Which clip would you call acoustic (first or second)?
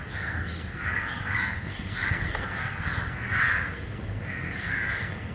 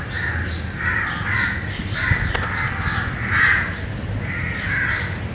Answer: second